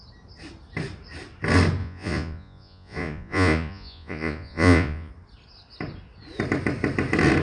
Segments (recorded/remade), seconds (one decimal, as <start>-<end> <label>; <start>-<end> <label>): 0.0-1.8 recorded; 1.8-5.1 remade; 5.1-7.4 recorded